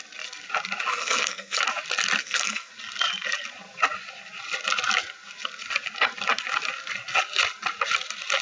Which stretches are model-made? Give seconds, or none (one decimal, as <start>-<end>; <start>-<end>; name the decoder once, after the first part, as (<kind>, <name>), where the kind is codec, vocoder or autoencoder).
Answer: 0.9-1.6 (codec, SNAC); 2.2-2.7